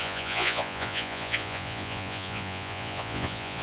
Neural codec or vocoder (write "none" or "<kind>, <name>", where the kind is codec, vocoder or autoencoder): vocoder, Vocos